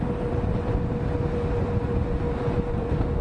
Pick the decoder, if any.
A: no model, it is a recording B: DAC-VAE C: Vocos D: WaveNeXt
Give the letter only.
A